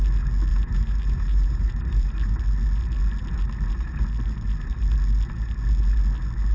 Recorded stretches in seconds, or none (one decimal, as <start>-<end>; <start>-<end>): 0.0-0.5; 2.4-6.5